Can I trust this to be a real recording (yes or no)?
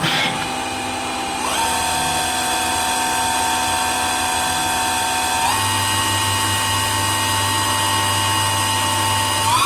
yes